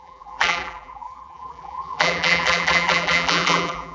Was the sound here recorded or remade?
remade